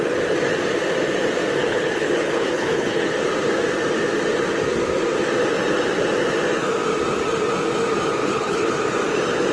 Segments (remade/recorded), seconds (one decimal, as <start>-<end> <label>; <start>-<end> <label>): 0.0-1.6 recorded; 1.6-3.1 remade; 3.1-8.2 recorded; 8.2-8.7 remade; 8.7-9.5 recorded